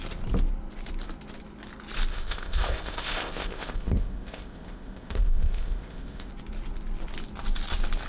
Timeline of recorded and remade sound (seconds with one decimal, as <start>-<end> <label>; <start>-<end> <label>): 0.0-2.1 recorded; 2.1-6.3 remade; 6.3-8.1 recorded